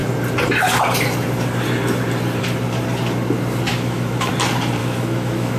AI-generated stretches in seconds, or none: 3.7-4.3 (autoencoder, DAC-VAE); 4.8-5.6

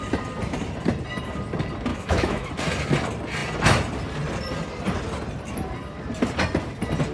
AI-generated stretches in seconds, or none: 1.9-2.5 (autoencoder, DAC-VAE)

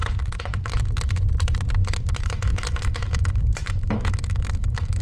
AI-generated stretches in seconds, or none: 0.0-0.8 (autoencoder, DAC-VAE); 1.8-5.0

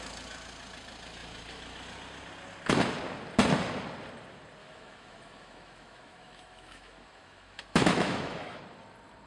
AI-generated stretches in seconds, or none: 4.6-8.6 (autoencoder, DAC-VAE)

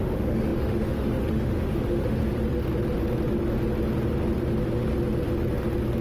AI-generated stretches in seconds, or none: 0.0-2.2 (autoencoder, DAC-VAE)

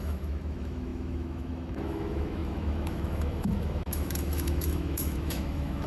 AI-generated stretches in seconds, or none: 0.0-5.9 (autoencoder, DAC-VAE)